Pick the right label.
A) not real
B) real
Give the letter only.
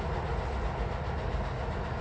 B